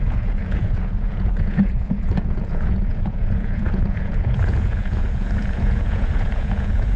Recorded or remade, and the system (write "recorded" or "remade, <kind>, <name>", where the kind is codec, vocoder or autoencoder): remade, vocoder, Vocos